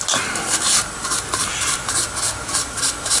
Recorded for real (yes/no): yes